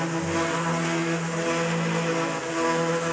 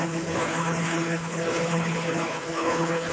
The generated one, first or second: second